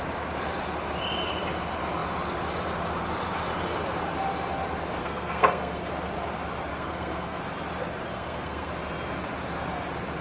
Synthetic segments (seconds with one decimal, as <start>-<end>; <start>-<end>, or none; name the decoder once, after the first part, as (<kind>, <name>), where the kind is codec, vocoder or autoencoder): 5.0-5.9 (codec, SNAC); 6.7-7.4; 8.1-8.7